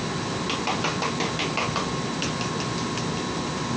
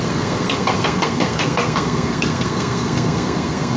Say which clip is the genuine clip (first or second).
first